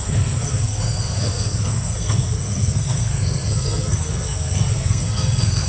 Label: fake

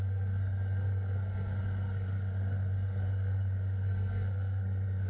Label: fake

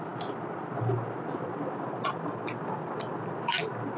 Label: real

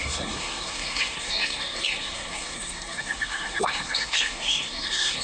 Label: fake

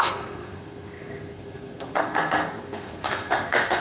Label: fake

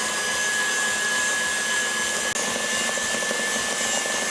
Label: real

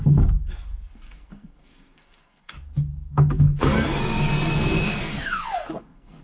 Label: fake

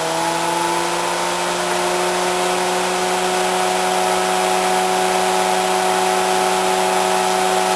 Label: real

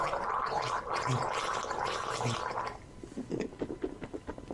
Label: real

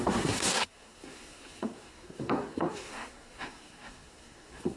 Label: fake